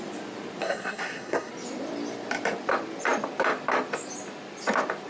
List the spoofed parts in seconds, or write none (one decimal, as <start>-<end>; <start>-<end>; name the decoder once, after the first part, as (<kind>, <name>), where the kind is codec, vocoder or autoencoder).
0.6-1.5 (codec, SNAC)